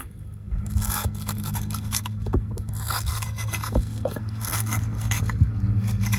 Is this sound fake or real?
fake